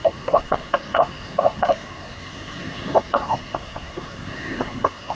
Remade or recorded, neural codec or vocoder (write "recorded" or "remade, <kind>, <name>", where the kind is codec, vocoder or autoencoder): remade, codec, SNAC